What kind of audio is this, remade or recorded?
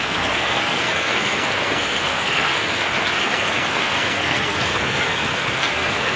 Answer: remade